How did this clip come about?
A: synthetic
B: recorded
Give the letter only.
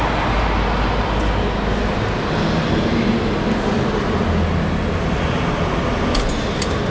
B